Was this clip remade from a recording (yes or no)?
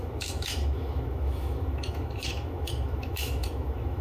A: yes